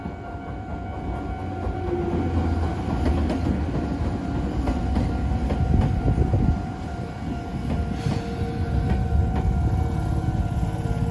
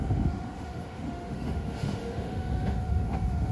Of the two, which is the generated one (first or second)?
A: second